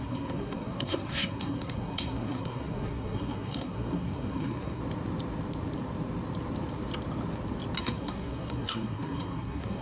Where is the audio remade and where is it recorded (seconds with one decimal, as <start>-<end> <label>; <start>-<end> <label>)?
0.0-4.8 remade; 4.8-7.8 recorded; 7.8-9.8 remade